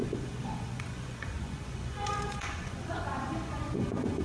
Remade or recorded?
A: remade